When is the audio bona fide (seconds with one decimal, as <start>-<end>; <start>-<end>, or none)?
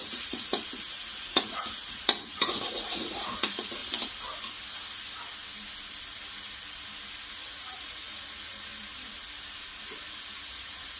3.8-7.3; 8.7-10.3